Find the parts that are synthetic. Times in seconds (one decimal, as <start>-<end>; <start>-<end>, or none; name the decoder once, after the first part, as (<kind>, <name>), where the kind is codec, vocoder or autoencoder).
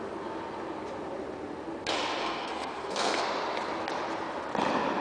2.2-3.2 (codec, SNAC)